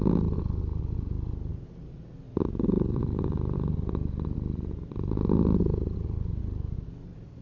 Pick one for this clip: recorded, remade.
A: recorded